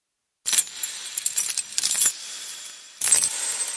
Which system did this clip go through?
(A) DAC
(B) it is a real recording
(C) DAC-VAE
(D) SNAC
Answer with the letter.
B